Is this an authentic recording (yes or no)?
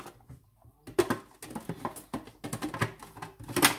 yes